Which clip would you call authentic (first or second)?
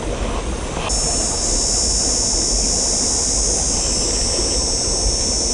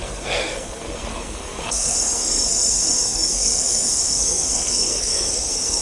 first